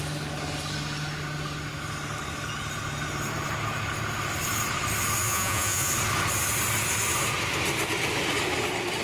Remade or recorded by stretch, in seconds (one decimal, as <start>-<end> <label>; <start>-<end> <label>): 0.0-5.2 recorded; 5.2-5.9 remade; 5.9-9.0 recorded